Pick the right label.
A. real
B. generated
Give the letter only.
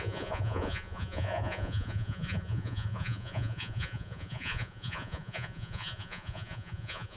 B